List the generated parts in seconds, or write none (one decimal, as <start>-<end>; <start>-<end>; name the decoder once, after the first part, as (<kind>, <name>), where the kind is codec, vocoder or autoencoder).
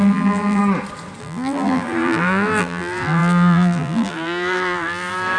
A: 0.0-0.6 (vocoder, BigVGAN v2); 1.2-5.4